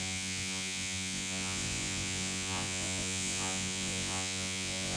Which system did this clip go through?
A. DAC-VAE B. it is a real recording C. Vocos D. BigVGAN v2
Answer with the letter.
C